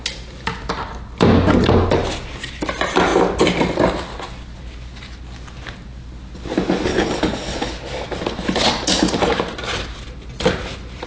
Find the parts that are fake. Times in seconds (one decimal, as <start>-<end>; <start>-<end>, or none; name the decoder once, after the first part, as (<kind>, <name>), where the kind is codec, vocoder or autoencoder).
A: 6.9-7.7 (codec, HILCodec)